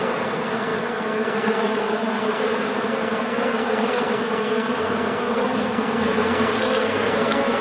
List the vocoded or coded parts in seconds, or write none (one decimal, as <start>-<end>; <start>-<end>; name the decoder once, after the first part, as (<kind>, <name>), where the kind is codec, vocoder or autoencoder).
0.0-7.6 (codec, SNAC)